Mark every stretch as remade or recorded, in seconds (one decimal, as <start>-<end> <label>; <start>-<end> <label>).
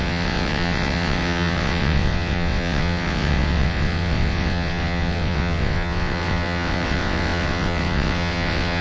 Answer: 0.0-8.8 remade